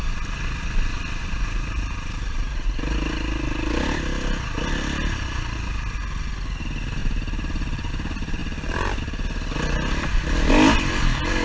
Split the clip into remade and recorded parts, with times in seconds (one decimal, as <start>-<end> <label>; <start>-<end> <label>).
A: 0.0-1.2 recorded; 1.2-2.5 remade; 2.5-11.4 recorded